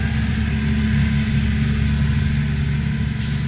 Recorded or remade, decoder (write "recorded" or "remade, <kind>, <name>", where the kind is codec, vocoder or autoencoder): recorded